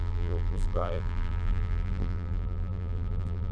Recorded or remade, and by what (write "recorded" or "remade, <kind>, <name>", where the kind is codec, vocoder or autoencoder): remade, vocoder, BigVGAN v2